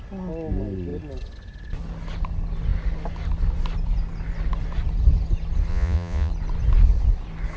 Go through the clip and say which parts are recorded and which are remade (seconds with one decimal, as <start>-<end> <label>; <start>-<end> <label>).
0.0-5.7 recorded; 5.7-6.3 remade; 6.3-7.6 recorded